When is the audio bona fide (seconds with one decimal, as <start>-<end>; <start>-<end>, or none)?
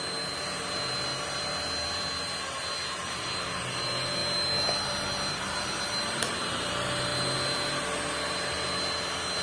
0.0-9.4